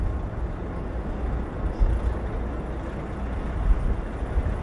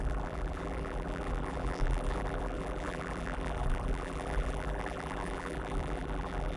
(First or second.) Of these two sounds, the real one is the first